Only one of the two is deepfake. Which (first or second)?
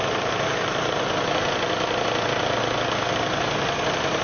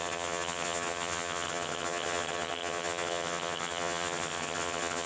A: second